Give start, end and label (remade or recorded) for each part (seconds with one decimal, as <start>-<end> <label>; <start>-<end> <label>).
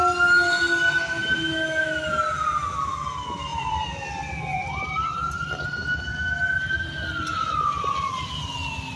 0.0-3.5 recorded; 3.5-5.3 remade; 5.3-9.0 recorded